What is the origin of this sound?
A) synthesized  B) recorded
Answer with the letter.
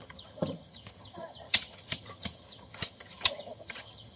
A